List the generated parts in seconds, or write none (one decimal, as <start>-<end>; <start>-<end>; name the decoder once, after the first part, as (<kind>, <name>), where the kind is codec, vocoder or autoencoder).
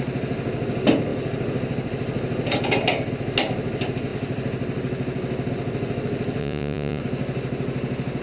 6.4-7.0 (vocoder, Vocos)